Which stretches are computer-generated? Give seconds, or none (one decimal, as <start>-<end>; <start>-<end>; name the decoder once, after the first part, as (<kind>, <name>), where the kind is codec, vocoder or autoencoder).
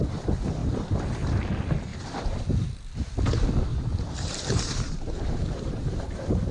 3.7-5.7 (vocoder, BigVGAN v2)